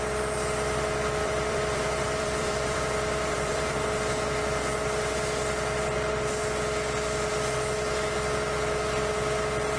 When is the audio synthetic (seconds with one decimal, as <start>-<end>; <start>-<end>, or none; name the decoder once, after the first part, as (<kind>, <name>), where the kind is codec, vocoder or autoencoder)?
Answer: 1.2-4.0 (vocoder, BigVGAN v2)